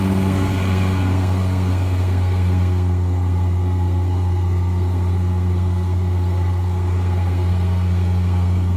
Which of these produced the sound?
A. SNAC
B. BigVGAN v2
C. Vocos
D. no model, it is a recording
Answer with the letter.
A